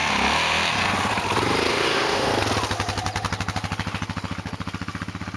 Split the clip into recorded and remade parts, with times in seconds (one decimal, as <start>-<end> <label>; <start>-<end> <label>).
0.0-1.7 recorded; 1.7-2.3 remade; 2.3-5.4 recorded